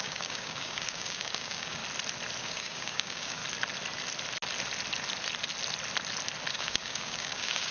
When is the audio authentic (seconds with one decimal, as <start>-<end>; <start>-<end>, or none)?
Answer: 1.8-2.4; 3.4-6.5